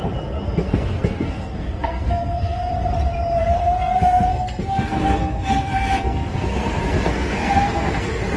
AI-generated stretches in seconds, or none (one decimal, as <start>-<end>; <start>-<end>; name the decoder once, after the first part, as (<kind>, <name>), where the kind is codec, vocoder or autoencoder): 0.0-2.7 (codec, SNAC); 3.4-8.4